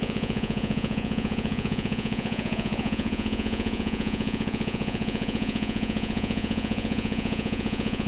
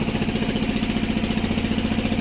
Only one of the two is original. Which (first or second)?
second